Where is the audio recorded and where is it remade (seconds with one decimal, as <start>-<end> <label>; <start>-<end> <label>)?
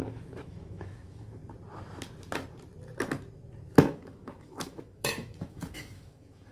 0.0-1.4 remade; 1.4-3.7 recorded; 3.7-6.5 remade